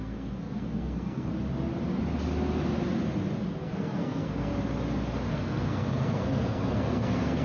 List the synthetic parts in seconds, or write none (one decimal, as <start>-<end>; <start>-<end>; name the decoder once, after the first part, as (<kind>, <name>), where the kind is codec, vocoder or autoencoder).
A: 0.0-1.3 (codec, SNAC); 3.6-4.5; 5.3-7.4